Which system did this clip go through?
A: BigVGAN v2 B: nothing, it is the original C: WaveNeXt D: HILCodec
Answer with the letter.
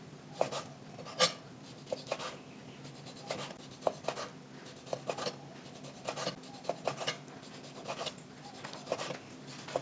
B